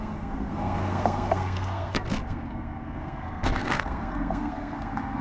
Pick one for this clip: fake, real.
fake